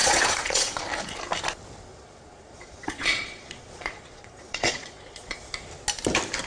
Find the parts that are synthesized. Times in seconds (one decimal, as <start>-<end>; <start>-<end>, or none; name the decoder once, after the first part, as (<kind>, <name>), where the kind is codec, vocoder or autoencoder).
0.0-0.8 (vocoder, Vocos); 1.9-5.4